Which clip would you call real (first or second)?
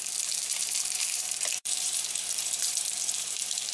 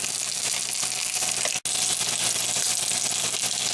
second